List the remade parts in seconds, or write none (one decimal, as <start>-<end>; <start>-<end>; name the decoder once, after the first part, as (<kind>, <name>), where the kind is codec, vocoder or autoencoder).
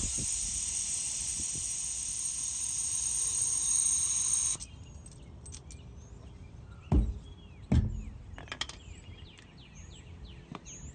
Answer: none